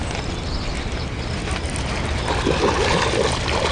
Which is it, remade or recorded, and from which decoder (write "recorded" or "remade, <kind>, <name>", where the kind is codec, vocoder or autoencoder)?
recorded